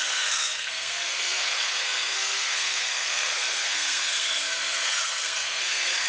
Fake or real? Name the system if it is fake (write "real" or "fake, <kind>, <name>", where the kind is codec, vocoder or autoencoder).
fake, codec, SNAC